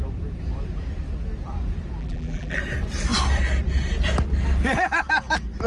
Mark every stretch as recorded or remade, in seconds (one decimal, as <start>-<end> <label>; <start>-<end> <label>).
0.0-2.0 recorded; 2.0-2.6 remade; 2.6-5.7 recorded